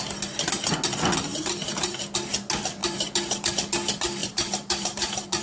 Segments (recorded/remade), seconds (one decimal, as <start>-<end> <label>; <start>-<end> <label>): 0.0-1.3 recorded; 1.3-2.0 remade; 2.0-2.8 recorded; 2.8-3.5 remade; 3.5-4.2 recorded; 4.2-5.4 remade

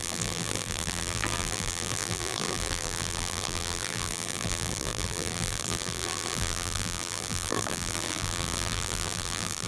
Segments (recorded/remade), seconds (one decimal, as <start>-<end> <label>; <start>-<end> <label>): 0.0-9.7 remade